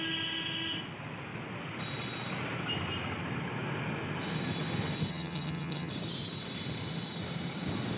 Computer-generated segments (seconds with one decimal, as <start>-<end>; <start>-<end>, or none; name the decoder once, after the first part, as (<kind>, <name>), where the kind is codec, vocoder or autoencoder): 5.1-5.9 (vocoder, HiFi-GAN)